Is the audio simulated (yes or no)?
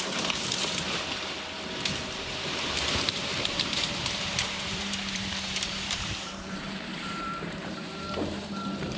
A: yes